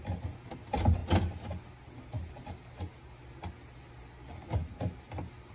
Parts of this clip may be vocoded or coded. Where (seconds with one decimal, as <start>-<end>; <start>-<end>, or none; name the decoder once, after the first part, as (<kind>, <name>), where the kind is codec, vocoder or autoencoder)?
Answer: none